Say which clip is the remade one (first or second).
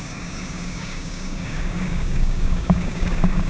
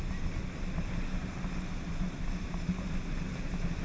first